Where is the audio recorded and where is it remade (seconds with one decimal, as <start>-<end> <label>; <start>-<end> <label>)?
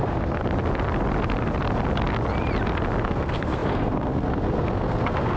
0.0-0.4 remade; 0.4-3.0 recorded; 3.0-5.4 remade